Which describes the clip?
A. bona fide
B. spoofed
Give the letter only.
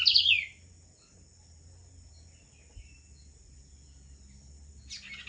A